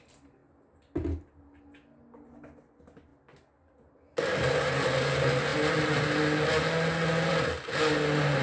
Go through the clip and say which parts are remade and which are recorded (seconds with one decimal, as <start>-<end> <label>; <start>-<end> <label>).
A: 0.0-8.4 recorded